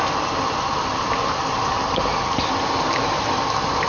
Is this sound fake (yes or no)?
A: no